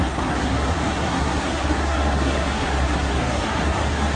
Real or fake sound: fake